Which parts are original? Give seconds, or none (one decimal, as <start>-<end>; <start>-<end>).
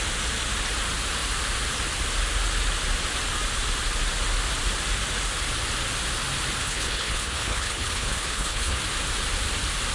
0.0-6.6; 8.8-9.9